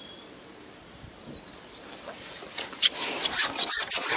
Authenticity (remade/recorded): recorded